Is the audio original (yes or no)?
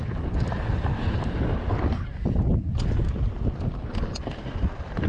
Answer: yes